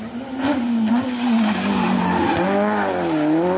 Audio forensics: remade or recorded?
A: recorded